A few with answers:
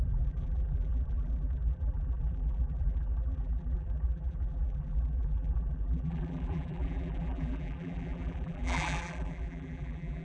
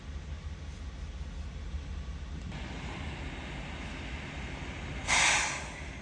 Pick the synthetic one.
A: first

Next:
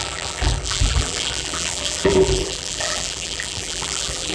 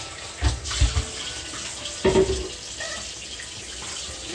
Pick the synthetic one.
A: first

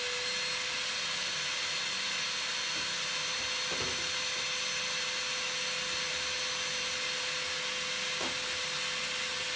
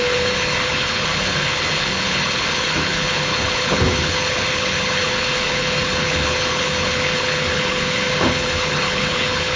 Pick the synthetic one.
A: second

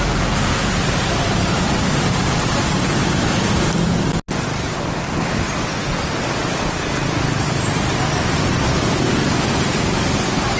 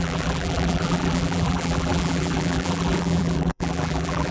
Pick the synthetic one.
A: second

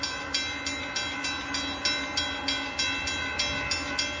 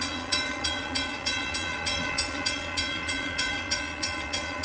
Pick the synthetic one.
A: second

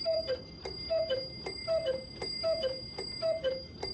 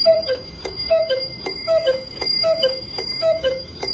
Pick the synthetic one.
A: second